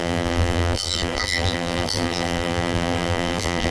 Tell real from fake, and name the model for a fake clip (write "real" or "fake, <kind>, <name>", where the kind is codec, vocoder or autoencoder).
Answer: fake, vocoder, BigVGAN v2